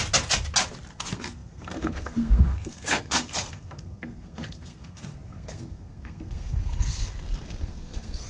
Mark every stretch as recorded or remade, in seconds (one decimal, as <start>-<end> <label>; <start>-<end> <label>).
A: 0.0-0.9 recorded; 0.9-8.3 remade